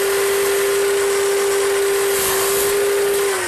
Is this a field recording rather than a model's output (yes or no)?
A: yes